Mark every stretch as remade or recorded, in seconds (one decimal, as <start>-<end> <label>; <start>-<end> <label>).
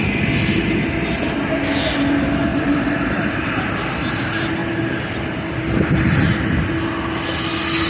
0.0-2.5 recorded; 2.5-3.8 remade; 3.8-4.6 recorded; 4.6-6.7 remade; 6.7-7.9 recorded